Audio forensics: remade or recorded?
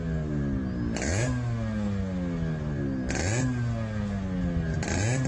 recorded